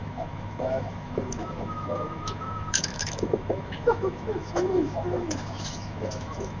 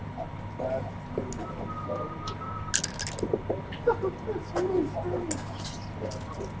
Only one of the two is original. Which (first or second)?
second